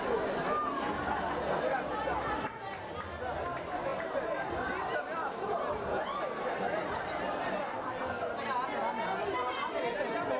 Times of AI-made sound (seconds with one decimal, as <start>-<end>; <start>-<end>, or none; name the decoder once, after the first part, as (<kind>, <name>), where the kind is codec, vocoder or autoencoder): 3.9-7.2 (vocoder, BigVGAN v2)